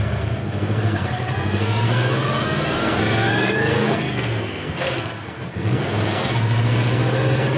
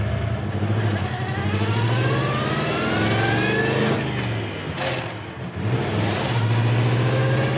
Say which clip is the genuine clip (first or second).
second